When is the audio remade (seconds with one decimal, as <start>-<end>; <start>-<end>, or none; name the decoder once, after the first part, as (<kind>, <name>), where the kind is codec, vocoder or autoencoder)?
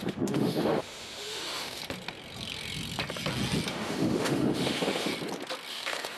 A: 0.0-1.8 (autoencoder, DAC-VAE); 3.7-5.1; 5.7-6.2